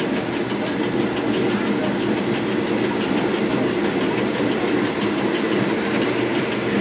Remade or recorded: recorded